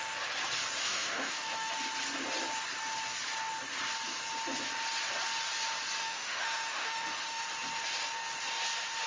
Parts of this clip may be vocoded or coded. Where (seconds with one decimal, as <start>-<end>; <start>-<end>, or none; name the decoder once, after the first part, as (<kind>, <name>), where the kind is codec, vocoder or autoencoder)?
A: 0.8-1.7 (autoencoder, DAC-VAE); 6.0-7.4